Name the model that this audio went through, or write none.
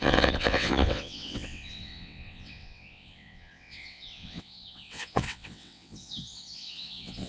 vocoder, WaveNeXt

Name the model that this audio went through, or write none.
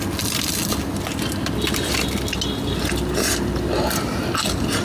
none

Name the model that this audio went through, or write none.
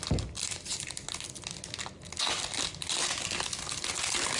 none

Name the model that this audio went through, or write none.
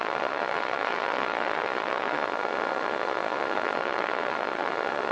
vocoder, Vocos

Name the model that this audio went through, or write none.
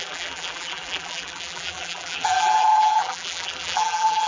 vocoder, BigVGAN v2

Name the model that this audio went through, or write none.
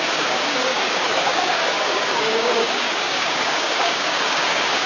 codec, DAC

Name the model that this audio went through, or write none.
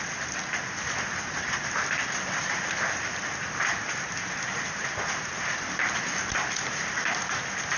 none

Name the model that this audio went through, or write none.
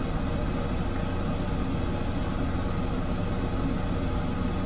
none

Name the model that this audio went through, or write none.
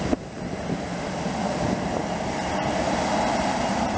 none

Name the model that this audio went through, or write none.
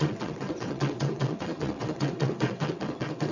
vocoder, WaveNeXt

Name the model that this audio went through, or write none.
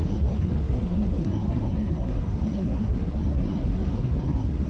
codec, SNAC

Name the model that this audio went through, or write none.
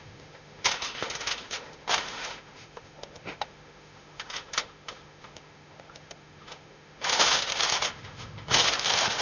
autoencoder, DAC-VAE